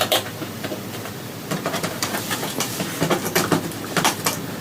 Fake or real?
fake